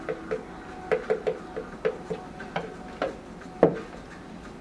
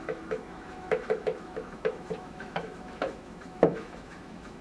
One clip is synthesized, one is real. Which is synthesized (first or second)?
second